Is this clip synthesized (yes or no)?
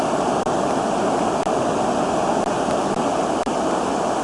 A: no